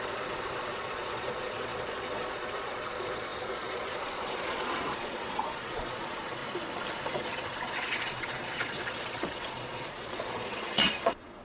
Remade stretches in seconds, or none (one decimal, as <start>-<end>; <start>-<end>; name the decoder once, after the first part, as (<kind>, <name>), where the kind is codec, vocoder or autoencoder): 0.0-6.4 (vocoder, Vocos); 7.1-11.4

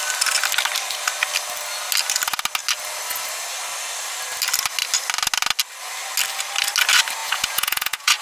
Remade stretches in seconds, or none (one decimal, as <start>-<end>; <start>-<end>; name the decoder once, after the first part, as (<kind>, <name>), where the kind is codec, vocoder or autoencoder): 7.2-8.2 (vocoder, Vocos)

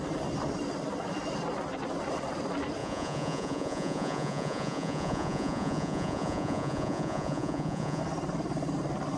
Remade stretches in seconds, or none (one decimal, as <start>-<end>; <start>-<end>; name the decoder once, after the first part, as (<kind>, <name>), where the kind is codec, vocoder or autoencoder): 2.8-8.0 (vocoder, Vocos)

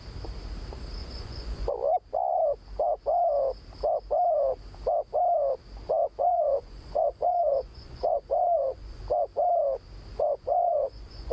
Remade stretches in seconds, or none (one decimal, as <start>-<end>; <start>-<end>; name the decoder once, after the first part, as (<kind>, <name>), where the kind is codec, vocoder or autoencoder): 1.0-1.7 (vocoder, Vocos); 6.0-9.0; 10.1-11.3

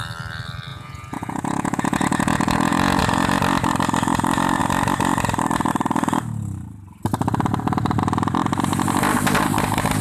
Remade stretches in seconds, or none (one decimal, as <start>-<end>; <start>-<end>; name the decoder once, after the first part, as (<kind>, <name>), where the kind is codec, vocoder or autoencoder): 0.7-3.0 (vocoder, Vocos)

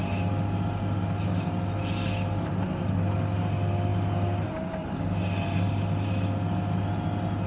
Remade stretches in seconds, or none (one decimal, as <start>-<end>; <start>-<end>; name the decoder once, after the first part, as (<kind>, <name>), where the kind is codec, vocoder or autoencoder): none

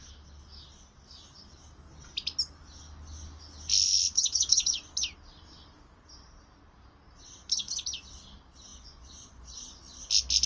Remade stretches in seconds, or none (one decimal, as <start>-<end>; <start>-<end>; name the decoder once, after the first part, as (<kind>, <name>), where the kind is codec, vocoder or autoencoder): 4.2-4.8 (vocoder, Vocos); 8.7-9.8

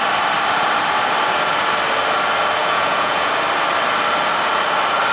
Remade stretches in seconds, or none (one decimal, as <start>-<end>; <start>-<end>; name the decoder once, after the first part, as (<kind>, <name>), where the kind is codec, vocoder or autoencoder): 2.6-3.3 (vocoder, Vocos)